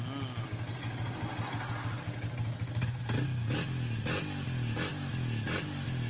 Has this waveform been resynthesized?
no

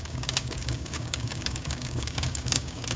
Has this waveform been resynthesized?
yes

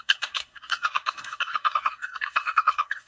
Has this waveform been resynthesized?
yes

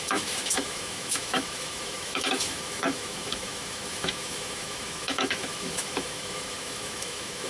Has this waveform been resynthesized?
yes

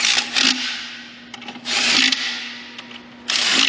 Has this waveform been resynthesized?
no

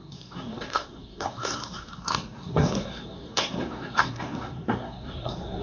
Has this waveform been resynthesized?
yes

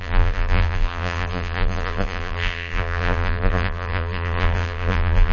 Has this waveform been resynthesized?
yes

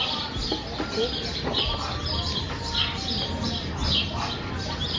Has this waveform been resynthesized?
no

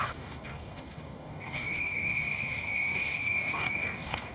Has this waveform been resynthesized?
yes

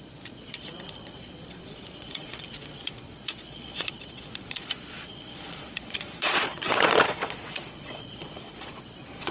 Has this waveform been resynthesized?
yes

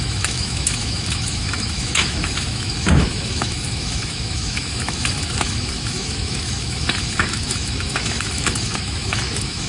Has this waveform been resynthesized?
yes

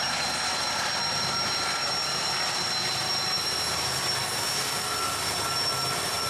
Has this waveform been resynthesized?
no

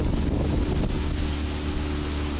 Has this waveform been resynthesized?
no